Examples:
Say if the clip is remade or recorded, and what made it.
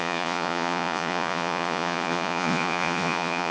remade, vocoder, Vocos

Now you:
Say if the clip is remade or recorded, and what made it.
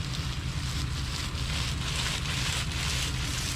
recorded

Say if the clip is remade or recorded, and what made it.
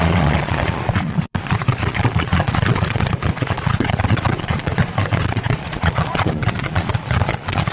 remade, vocoder, Vocos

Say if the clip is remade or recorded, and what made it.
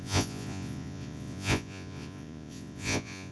remade, vocoder, Vocos